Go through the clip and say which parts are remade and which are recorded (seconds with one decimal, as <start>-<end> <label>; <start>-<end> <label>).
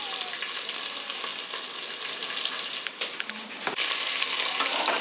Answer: 0.0-5.0 recorded